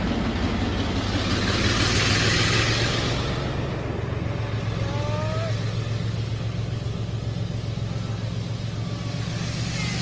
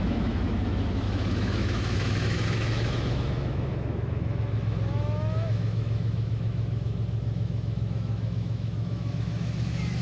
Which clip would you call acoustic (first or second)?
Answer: first